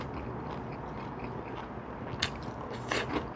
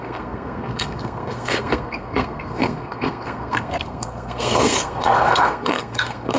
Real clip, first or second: first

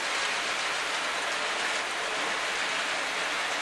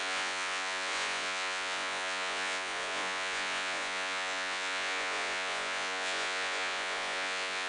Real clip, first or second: first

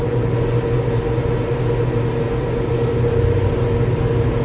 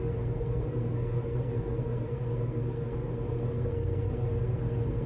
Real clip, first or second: first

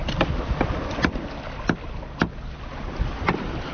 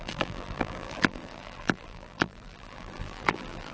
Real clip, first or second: first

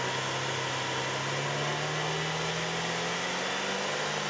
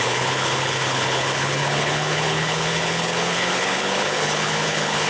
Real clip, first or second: first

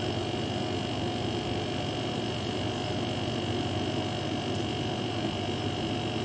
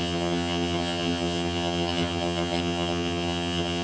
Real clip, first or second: first